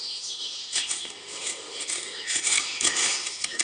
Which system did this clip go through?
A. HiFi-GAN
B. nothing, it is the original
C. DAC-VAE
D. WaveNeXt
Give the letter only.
C